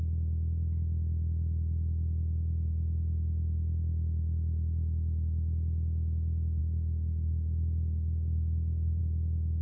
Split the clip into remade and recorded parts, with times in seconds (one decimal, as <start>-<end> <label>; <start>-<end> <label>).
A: 0.0-6.6 recorded; 6.6-9.0 remade; 9.0-9.6 recorded